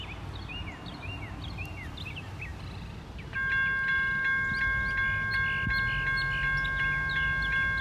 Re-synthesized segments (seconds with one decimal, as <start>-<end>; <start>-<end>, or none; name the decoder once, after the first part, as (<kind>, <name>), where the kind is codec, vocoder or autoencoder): none